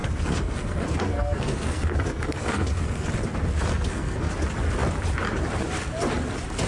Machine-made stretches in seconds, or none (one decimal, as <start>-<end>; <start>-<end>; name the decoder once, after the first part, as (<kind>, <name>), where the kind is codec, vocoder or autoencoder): 0.0-3.1 (codec, SNAC); 3.7-4.3